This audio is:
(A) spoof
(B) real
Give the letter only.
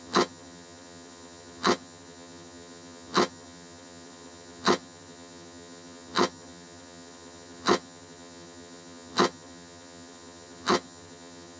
A